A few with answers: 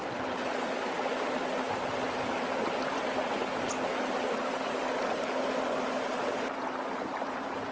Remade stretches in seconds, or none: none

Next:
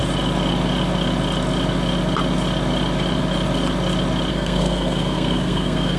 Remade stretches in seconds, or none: 4.3-6.0 (codec, SNAC)

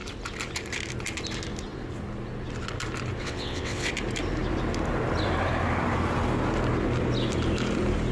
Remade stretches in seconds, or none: 3.2-3.9 (vocoder, WaveNeXt)

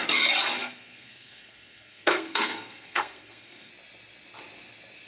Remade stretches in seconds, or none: 0.6-3.7 (codec, SNAC)

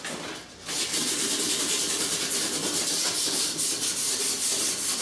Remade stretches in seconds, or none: none

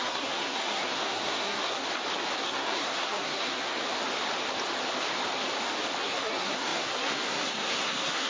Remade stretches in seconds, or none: 0.0-1.8 (codec, SNAC); 2.4-3.8; 6.0-8.3

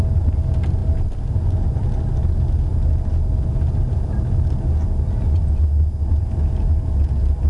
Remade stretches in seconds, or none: none

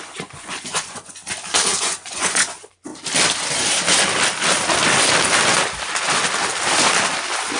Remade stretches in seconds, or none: 0.0-1.2 (vocoder, Vocos); 1.8-2.9